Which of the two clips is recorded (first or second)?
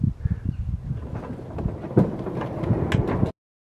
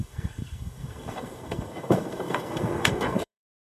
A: first